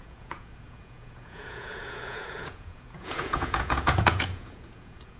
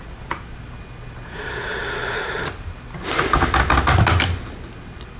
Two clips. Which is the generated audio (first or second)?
first